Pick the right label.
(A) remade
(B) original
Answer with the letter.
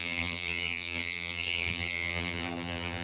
A